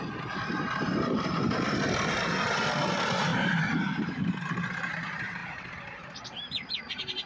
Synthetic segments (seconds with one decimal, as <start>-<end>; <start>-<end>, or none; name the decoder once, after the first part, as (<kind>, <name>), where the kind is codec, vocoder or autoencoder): 3.3-4.5 (vocoder, BigVGAN v2); 5.4-6.8